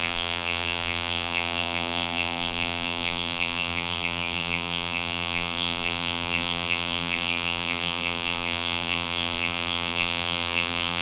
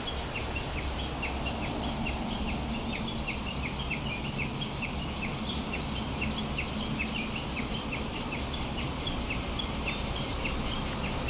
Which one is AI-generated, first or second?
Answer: first